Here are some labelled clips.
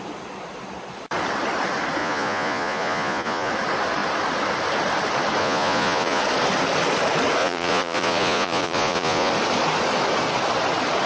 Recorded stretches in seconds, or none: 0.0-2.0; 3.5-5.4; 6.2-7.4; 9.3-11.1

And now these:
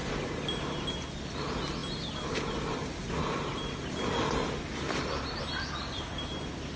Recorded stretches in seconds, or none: 0.0-6.8

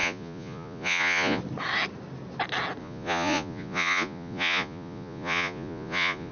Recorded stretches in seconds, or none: 1.4-2.8

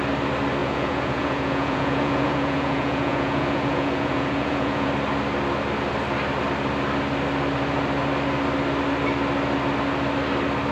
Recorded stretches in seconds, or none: 0.0-0.6; 4.9-10.7

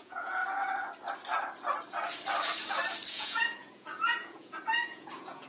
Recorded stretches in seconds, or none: 0.4-3.1

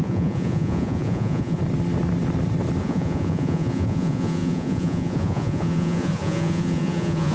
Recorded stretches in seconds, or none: 1.6-2.8

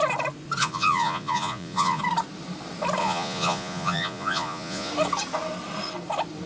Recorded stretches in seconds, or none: 0.0-0.6; 2.0-3.0; 4.9-6.5